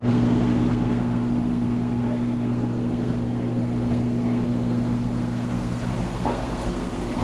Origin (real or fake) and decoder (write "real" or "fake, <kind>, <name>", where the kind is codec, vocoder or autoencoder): fake, codec, SNAC